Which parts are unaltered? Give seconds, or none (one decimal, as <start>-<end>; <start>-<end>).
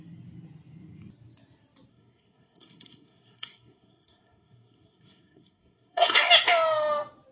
0.0-1.9; 6.3-7.3